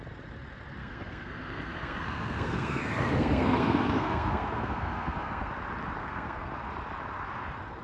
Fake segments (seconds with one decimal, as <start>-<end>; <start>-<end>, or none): 0.8-5.5; 6.0-6.5